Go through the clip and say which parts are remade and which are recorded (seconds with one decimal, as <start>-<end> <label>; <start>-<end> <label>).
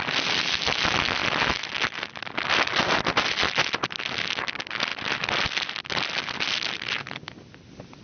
0.0-8.0 recorded